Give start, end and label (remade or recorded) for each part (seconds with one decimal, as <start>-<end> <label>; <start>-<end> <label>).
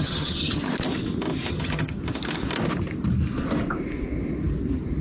0.0-0.6 remade; 0.6-1.5 recorded; 1.5-2.0 remade; 2.0-5.0 recorded